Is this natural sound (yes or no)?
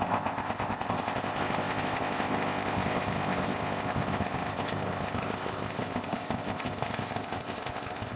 no